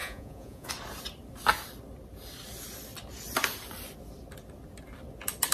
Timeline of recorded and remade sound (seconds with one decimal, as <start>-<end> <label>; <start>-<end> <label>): 0.0-0.7 remade; 0.7-5.5 recorded